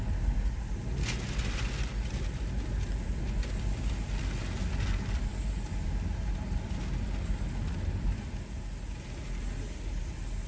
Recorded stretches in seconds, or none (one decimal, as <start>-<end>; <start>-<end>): 0.0-10.5